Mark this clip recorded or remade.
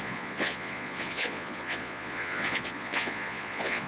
remade